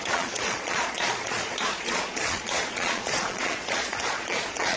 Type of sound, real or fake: fake